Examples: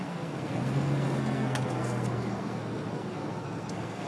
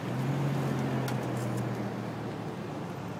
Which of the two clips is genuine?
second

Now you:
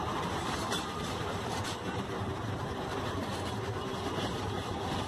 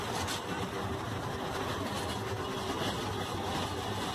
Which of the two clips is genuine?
second